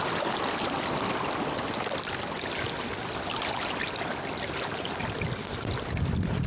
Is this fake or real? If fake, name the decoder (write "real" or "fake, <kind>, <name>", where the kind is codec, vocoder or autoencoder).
real